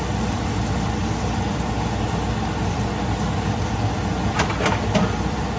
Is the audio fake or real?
real